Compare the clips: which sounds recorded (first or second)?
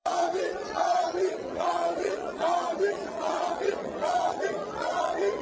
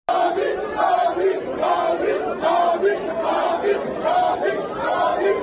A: second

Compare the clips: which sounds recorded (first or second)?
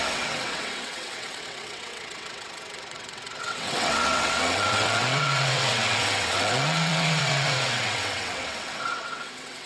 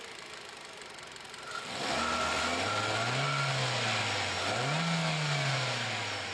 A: second